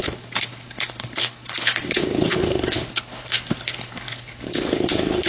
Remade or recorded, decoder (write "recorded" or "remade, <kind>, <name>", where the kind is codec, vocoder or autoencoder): remade, codec, HILCodec